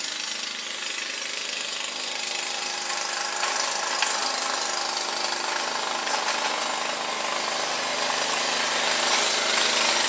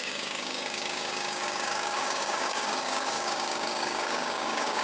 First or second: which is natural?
first